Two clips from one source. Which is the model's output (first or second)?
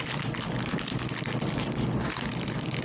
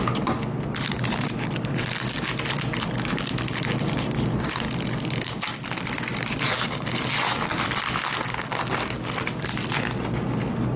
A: first